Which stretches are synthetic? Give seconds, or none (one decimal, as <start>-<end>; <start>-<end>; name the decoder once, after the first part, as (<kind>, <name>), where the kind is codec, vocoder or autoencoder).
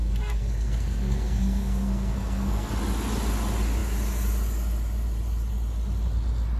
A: 0.0-2.7 (codec, SNAC)